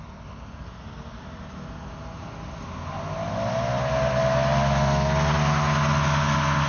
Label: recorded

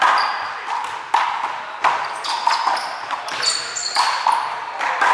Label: recorded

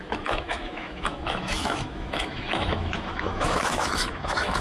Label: remade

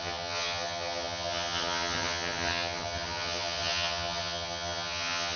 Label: remade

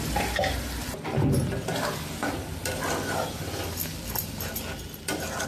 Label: recorded